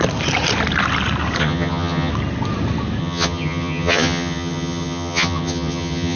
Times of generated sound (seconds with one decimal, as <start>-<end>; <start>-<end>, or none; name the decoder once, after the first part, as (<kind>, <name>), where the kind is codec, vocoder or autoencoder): 1.4-2.1 (vocoder, HiFi-GAN); 3.0-6.2